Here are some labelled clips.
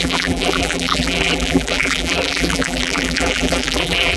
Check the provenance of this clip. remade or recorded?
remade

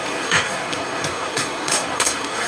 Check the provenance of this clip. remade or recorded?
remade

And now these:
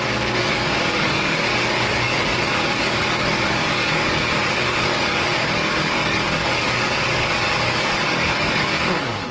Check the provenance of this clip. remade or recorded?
remade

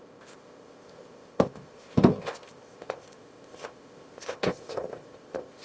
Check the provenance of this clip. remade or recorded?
remade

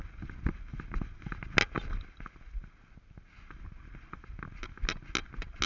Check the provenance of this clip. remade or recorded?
recorded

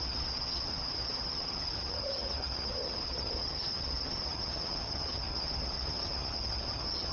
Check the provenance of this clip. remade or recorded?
remade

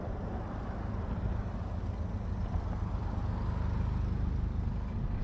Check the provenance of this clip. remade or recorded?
recorded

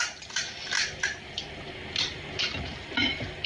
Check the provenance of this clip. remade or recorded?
recorded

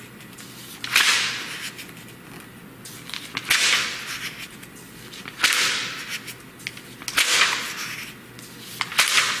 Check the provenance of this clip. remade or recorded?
recorded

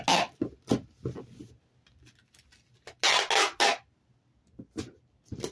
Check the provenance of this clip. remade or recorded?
recorded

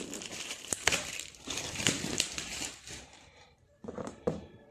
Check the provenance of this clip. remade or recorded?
remade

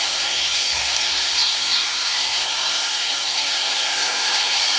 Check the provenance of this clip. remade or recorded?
remade